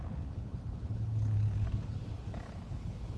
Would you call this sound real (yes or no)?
no